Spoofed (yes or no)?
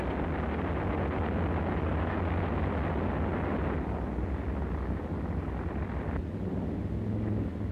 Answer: no